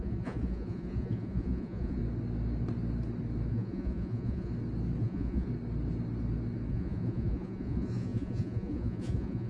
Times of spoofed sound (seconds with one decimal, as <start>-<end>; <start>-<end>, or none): 0.0-2.0; 3.5-4.5; 5.0-5.5; 6.7-9.5